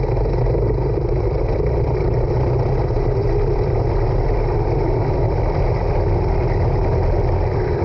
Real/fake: fake